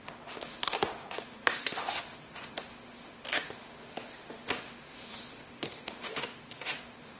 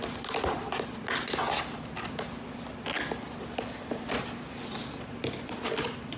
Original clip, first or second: second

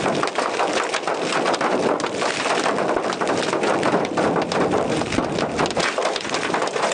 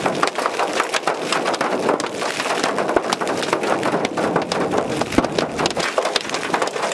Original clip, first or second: second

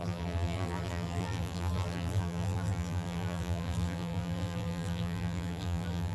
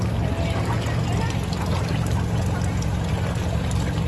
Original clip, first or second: second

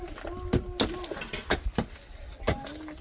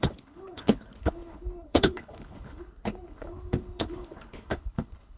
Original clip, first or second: first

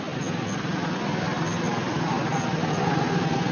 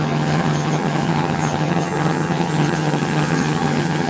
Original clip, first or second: first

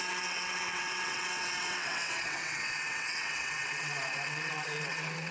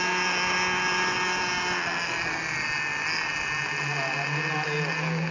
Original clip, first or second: second